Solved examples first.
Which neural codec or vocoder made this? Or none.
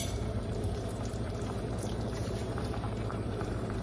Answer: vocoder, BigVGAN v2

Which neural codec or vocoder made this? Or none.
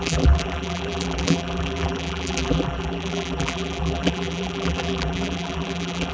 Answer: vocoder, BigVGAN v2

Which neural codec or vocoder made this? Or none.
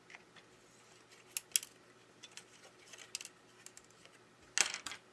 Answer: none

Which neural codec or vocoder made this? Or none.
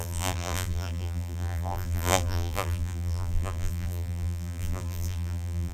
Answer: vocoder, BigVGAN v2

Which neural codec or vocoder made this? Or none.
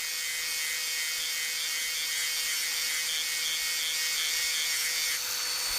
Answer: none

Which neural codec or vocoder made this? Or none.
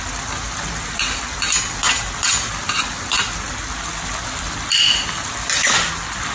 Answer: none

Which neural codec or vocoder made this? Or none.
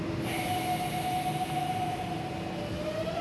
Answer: none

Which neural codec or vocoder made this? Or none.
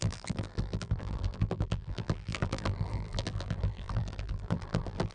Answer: vocoder, BigVGAN v2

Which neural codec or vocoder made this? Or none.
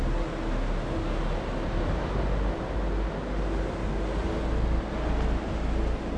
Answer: none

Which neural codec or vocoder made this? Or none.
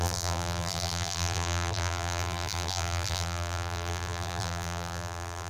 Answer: vocoder, BigVGAN v2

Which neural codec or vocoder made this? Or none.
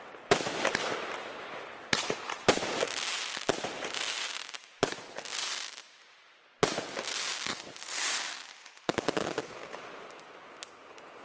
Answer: none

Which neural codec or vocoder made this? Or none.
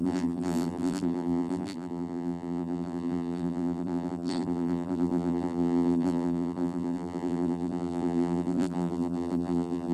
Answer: vocoder, BigVGAN v2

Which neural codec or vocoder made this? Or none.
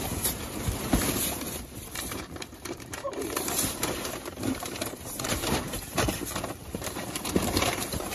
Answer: vocoder, BigVGAN v2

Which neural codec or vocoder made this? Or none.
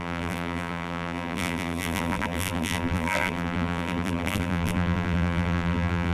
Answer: vocoder, BigVGAN v2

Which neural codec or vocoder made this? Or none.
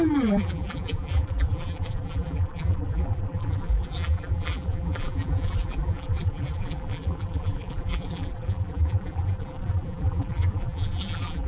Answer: vocoder, BigVGAN v2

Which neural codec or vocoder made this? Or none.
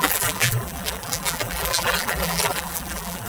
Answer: vocoder, BigVGAN v2